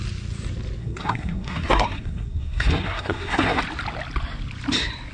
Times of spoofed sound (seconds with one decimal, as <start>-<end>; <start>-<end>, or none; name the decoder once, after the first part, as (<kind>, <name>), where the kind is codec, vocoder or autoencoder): 0.8-3.6 (codec, SNAC)